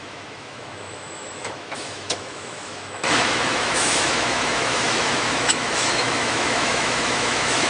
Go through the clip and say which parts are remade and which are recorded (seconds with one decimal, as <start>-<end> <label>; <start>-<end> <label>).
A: 0.0-7.7 remade